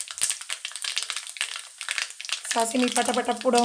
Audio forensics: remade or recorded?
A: recorded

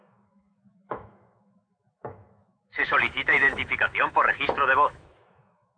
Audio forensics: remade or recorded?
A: remade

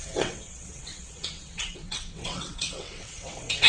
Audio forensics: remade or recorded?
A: remade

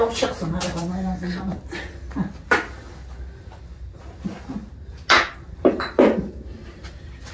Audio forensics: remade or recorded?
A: recorded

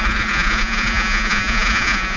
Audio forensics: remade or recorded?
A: remade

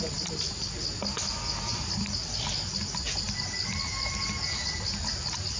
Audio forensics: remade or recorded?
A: recorded